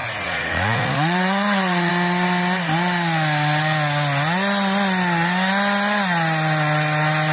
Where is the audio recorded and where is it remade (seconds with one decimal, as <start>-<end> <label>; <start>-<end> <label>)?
0.0-1.9 remade; 1.9-7.3 recorded

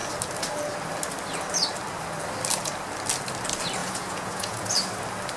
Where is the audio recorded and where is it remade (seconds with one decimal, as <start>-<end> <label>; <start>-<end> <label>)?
0.0-3.8 recorded; 3.8-4.7 remade; 4.7-5.4 recorded

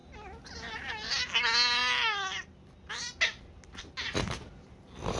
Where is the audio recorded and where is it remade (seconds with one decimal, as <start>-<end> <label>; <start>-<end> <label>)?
0.0-5.2 recorded

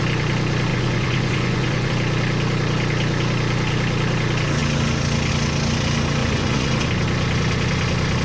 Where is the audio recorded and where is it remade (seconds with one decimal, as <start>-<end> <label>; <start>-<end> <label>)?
0.0-0.7 recorded; 0.7-1.9 remade; 1.9-6.2 recorded; 6.2-6.9 remade; 6.9-8.2 recorded

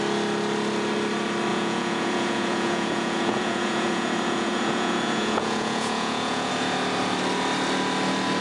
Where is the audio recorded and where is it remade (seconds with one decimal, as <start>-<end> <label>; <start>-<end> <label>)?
0.0-1.5 recorded; 1.5-6.5 remade; 6.5-8.4 recorded

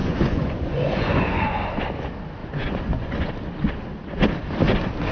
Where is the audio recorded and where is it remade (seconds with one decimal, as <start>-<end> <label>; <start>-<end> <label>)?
0.0-1.6 remade; 1.6-2.4 recorded; 2.4-3.3 remade; 3.3-5.1 recorded

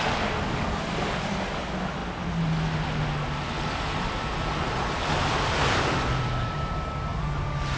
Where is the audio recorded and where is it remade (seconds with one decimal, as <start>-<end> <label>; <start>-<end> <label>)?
0.0-7.8 recorded